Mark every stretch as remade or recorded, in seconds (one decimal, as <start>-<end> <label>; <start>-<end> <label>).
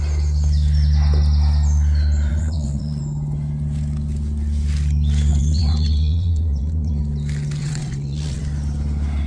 0.0-2.3 recorded; 2.3-3.0 remade; 3.0-5.3 recorded; 5.3-7.0 remade; 7.0-7.6 recorded; 7.6-8.4 remade; 8.4-9.3 recorded